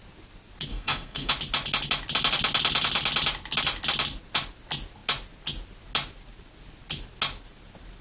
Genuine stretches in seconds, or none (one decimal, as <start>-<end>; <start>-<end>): 0.0-0.7; 1.3-8.0